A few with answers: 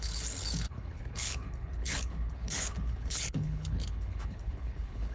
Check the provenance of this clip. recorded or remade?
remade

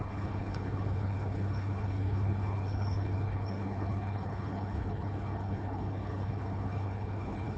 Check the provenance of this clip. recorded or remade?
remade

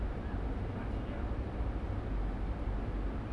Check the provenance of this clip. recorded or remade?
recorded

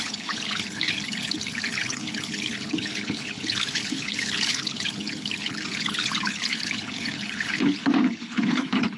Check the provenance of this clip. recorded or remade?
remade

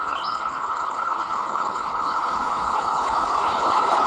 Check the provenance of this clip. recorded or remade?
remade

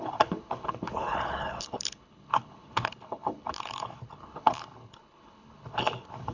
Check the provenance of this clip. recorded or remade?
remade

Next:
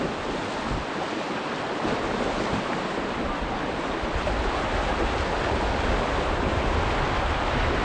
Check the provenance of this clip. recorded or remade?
recorded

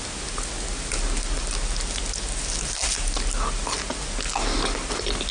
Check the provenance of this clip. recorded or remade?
recorded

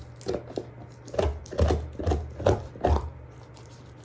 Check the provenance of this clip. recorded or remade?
recorded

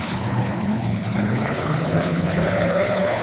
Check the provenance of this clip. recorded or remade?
remade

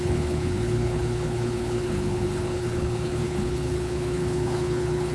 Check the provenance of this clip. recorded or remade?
remade